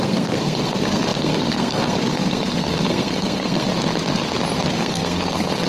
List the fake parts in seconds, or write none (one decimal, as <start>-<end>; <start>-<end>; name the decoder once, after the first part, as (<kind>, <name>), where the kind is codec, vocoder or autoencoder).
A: 0.0-3.7 (codec, SNAC); 4.7-5.7